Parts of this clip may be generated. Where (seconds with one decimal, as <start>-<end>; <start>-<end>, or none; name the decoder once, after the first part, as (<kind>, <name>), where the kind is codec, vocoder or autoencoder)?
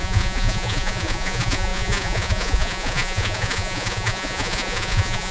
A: 0.0-5.3 (vocoder, Vocos)